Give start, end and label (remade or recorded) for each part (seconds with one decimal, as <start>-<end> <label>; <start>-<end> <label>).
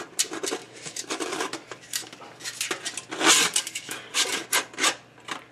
0.0-0.6 recorded; 0.6-2.7 remade; 2.7-3.4 recorded; 3.4-4.3 remade; 4.3-5.5 recorded